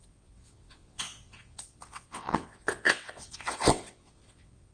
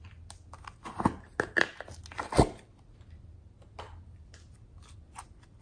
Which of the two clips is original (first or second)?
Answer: second